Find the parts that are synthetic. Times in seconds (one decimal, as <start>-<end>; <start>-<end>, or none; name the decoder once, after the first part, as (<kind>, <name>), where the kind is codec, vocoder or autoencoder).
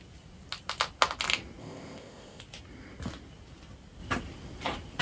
1.6-2.4 (codec, ZipCodec)